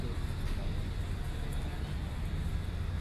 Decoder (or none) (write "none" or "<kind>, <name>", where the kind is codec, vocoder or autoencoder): none